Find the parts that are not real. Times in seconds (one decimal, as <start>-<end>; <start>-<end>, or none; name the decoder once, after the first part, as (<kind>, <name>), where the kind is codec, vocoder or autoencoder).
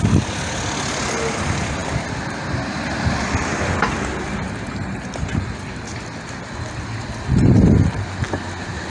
none